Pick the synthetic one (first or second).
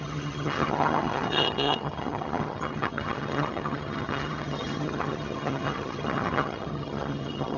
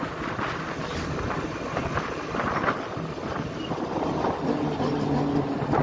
first